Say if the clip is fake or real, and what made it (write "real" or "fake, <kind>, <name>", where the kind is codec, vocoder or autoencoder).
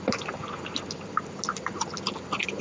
real